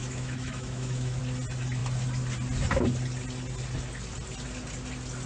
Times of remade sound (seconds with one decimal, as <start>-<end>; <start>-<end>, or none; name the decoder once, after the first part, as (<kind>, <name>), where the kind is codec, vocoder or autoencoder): 0.0-1.2 (autoencoder, DAC-VAE)